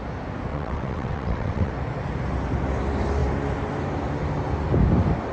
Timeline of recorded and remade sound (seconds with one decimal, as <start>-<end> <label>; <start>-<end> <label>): 0.0-0.5 recorded; 0.5-1.7 remade; 1.7-5.3 recorded